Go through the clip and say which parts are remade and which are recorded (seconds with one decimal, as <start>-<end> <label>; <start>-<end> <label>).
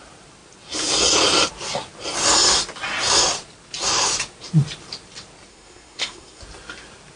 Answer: 0.0-5.5 recorded; 5.5-6.4 remade; 6.4-7.2 recorded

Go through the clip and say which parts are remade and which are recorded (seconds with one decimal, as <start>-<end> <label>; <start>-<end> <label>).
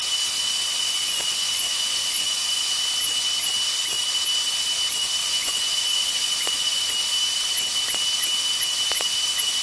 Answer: 0.0-0.7 recorded; 0.7-2.8 remade; 2.8-5.2 recorded; 5.2-6.9 remade; 6.9-9.6 recorded